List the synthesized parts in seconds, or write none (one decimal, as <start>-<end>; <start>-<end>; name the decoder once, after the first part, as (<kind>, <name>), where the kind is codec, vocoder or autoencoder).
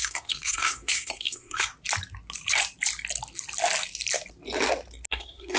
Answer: 0.0-1.7 (codec, SNAC); 5.1-5.6